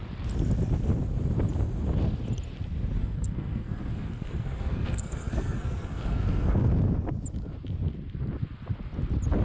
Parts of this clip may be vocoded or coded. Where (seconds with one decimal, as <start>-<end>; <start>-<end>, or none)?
3.0-6.7